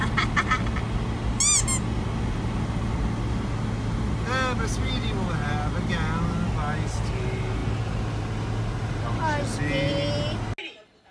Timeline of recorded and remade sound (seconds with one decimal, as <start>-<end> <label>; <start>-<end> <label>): 0.0-11.1 recorded